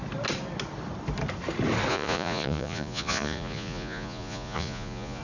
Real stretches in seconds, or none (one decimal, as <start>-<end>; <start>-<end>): 0.0-1.9